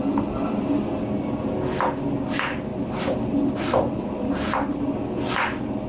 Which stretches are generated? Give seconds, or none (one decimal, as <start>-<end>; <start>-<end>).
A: none